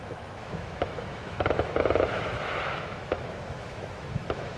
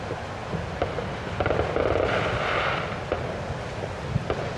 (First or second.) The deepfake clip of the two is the first